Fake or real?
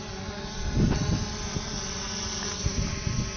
real